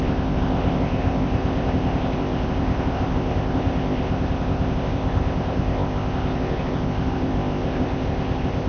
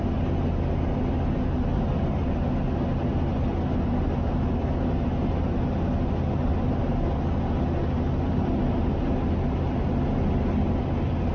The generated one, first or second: first